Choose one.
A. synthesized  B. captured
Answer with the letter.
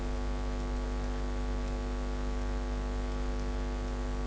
B